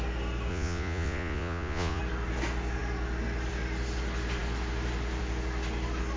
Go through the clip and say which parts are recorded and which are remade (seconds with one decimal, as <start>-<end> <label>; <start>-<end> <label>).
0.0-0.5 recorded; 0.5-2.0 remade; 2.0-6.2 recorded